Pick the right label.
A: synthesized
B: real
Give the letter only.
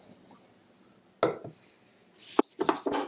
B